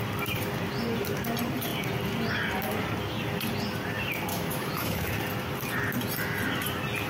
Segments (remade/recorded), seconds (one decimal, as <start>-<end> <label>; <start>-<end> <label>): 0.0-4.3 recorded; 4.3-5.1 remade; 5.1-7.1 recorded